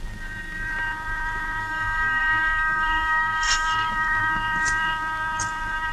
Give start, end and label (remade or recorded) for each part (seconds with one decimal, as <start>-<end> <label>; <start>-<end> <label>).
0.0-1.6 recorded; 1.6-3.9 remade; 3.9-5.9 recorded